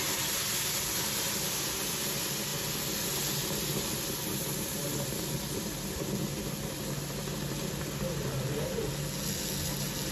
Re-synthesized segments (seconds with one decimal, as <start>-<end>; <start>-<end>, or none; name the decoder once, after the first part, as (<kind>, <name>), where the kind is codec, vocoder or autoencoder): none